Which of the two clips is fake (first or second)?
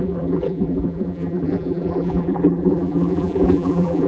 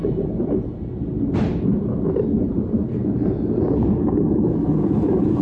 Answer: first